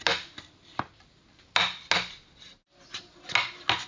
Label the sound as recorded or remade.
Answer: recorded